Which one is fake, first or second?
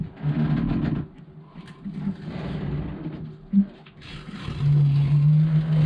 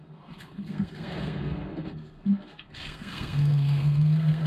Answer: second